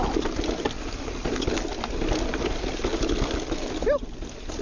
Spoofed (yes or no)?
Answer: no